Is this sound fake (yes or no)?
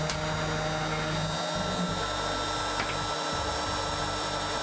no